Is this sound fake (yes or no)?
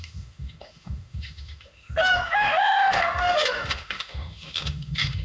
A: yes